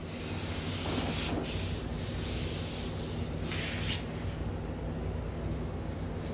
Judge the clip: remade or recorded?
recorded